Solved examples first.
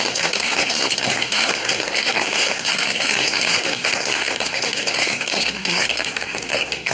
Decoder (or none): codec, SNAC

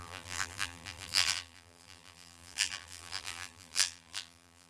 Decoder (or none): vocoder, BigVGAN v2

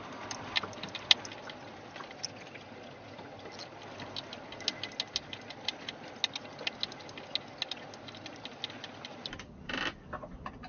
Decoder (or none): none